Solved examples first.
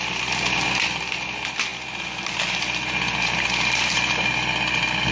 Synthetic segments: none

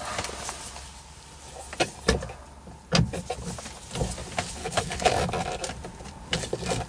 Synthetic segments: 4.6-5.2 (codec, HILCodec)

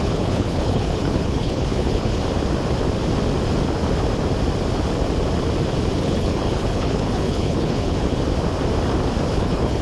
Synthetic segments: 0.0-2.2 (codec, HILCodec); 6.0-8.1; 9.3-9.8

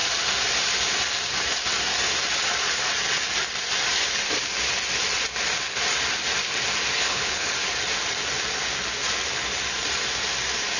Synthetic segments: 7.0-7.5 (codec, HILCodec)

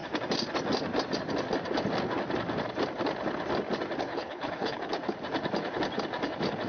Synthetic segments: 4.0-4.9 (codec, HILCodec)